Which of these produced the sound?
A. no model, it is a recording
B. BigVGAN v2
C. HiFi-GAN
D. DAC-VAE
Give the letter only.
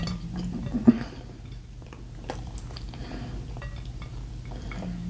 A